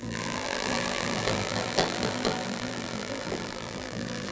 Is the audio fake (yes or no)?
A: yes